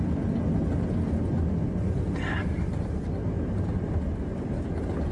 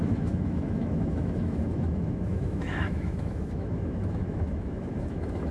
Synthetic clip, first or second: second